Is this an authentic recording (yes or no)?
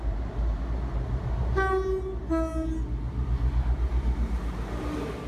yes